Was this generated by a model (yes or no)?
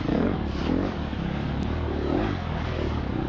yes